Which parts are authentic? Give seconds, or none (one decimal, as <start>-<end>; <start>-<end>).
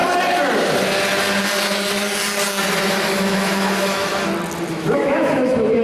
0.0-2.9; 4.1-4.7